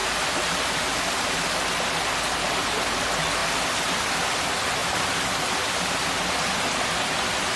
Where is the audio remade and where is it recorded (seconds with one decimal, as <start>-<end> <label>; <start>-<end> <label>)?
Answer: 0.0-0.7 remade; 0.7-7.6 recorded